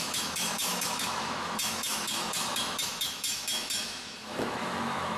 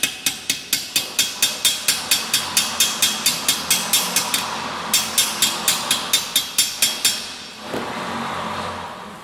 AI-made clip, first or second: first